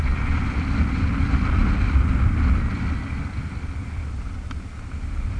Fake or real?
real